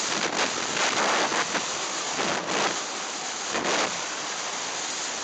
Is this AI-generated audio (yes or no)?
no